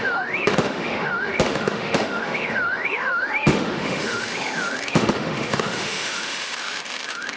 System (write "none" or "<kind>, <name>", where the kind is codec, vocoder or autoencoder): autoencoder, DAC-VAE